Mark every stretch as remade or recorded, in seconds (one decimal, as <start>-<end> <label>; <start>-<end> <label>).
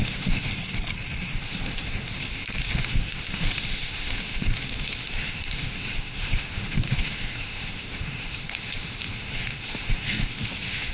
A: 0.0-0.5 remade; 0.5-1.3 recorded; 1.3-10.9 remade